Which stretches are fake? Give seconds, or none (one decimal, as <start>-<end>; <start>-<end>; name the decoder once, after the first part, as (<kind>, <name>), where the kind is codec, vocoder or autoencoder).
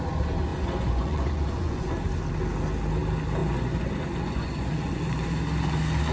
0.5-1.9 (vocoder, Vocos); 3.4-5.3